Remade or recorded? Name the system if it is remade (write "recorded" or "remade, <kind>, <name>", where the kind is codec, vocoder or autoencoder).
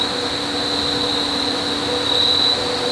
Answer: recorded